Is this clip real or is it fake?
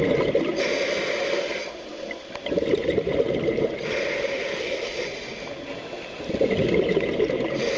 real